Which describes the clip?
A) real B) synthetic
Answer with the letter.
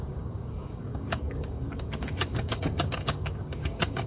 B